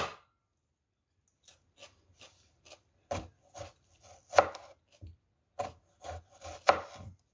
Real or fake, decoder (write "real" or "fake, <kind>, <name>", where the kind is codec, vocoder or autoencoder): real